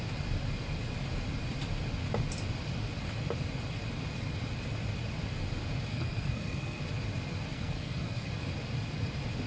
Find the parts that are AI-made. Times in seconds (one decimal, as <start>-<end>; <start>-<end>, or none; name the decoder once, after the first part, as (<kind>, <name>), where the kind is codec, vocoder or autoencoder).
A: 5.9-6.8 (codec, SNAC); 7.5-8.3